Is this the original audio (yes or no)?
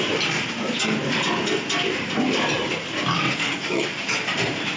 yes